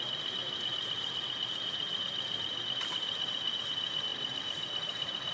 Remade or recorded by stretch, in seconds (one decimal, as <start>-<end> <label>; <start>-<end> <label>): 0.0-5.3 recorded